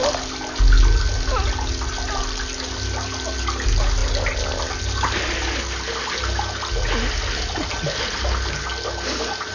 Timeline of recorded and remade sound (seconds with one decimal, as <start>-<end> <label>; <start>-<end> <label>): 0.0-9.5 recorded